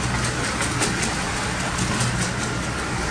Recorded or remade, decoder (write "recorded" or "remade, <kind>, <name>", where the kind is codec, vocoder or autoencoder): recorded